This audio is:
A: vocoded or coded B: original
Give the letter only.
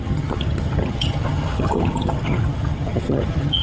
A